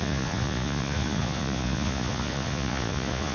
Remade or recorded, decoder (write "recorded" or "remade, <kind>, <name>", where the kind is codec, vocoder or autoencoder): remade, vocoder, Vocos